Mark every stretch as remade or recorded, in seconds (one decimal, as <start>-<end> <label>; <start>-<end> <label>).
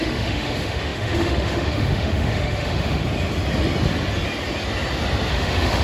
0.0-3.0 remade; 3.0-5.3 recorded; 5.3-5.8 remade